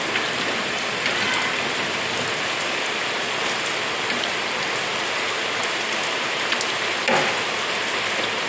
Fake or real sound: real